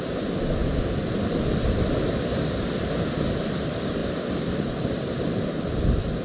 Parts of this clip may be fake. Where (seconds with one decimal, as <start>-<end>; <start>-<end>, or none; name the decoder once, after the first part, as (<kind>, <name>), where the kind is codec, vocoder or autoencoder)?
4.0-5.3 (vocoder, BigVGAN v2)